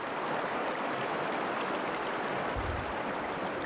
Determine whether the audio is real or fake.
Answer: real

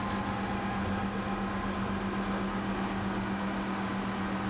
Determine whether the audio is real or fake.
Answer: real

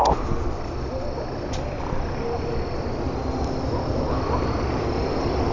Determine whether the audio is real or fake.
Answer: real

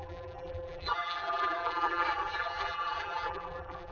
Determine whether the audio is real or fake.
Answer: fake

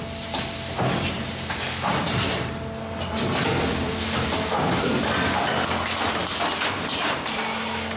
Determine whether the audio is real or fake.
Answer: real